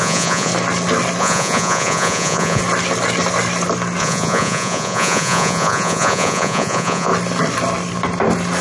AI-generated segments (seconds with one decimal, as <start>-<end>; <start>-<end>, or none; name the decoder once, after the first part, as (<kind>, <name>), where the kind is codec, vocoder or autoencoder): 0.0-0.5 (vocoder, Vocos); 1.2-2.6; 4.0-7.1